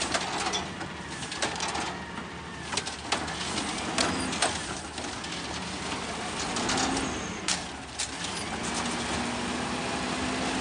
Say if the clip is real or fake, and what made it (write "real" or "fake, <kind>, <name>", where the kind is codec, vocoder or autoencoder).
real